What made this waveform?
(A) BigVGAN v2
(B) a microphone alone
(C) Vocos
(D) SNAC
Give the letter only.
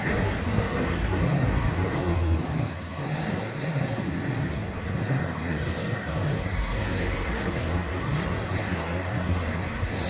D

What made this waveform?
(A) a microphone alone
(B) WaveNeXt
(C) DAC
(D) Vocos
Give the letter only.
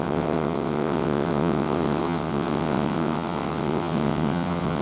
B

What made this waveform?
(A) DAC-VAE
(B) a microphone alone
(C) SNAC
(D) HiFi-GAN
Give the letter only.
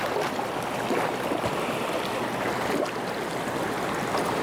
B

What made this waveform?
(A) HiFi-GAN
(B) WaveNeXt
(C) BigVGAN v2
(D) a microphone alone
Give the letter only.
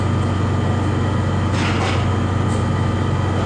D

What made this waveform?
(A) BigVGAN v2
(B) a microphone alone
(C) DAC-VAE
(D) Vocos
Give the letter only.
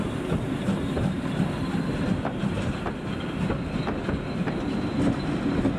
B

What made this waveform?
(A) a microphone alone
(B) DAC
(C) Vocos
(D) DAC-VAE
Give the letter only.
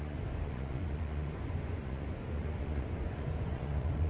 C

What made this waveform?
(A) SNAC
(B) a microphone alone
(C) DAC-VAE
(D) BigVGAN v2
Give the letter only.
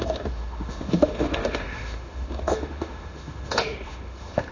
C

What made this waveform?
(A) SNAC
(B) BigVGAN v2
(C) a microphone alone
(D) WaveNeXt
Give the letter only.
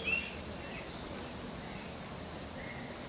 C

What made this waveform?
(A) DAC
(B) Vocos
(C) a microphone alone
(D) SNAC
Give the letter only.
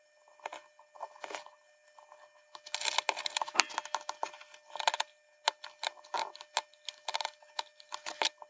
C